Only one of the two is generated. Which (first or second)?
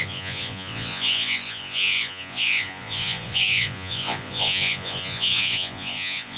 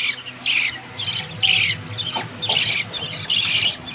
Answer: first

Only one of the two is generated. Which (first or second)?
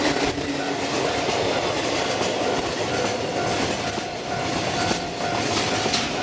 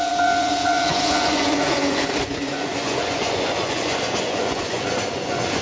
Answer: second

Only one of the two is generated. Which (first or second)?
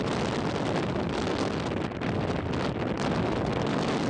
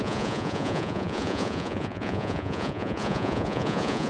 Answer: second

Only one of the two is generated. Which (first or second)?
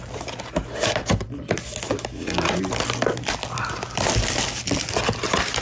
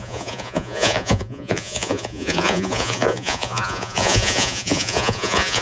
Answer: second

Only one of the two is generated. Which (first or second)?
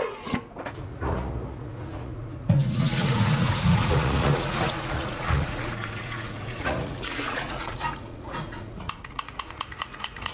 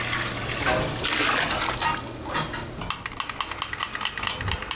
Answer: first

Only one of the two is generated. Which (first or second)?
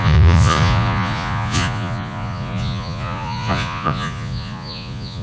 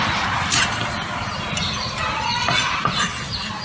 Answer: first